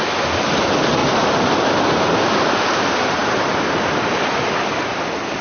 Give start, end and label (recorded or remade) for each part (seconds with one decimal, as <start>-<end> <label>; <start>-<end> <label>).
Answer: 0.0-3.2 recorded; 3.2-4.0 remade; 4.0-5.4 recorded